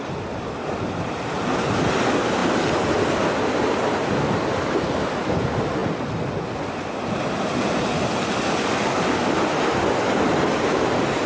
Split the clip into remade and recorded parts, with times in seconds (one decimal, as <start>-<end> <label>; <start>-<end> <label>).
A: 0.0-11.3 recorded